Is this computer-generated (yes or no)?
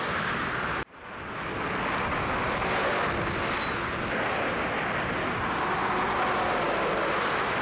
no